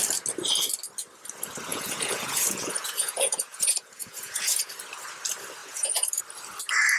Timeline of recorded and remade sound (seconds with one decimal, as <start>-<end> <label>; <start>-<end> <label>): 0.0-1.7 recorded; 1.7-4.7 remade; 4.7-5.6 recorded; 5.6-6.2 remade; 6.2-7.0 recorded

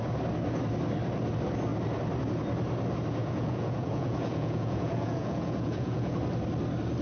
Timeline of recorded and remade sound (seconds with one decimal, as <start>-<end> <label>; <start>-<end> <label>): 0.0-3.2 recorded; 3.2-6.1 remade; 6.1-7.0 recorded

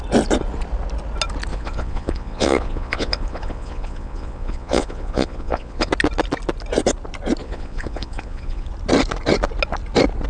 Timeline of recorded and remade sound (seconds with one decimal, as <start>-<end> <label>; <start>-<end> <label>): 0.0-1.5 recorded; 1.5-5.9 remade; 5.9-7.4 recorded; 7.4-8.7 remade; 8.7-10.3 recorded

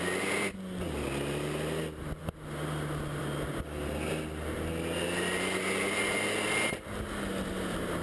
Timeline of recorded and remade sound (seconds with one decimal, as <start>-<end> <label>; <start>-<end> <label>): 0.0-8.0 recorded

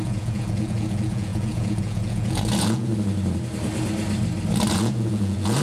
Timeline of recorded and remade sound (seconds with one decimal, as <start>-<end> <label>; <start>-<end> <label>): 0.0-2.9 remade; 2.9-4.7 recorded; 4.7-5.6 remade

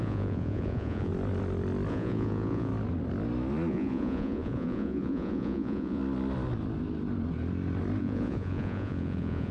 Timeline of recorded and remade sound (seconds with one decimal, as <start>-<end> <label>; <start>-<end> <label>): 0.0-1.1 remade; 1.1-1.9 recorded; 1.9-2.7 remade; 2.7-3.7 recorded; 3.7-6.0 remade; 6.0-8.0 recorded; 8.0-9.5 remade

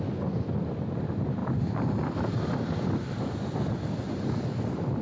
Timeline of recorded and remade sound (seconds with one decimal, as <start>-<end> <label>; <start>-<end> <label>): 0.0-5.0 recorded

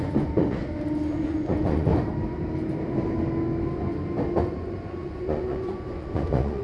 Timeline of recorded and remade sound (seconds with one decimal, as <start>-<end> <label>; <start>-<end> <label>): 0.0-0.6 remade; 0.6-1.1 recorded; 1.1-1.9 remade; 1.9-4.4 recorded; 4.4-6.6 remade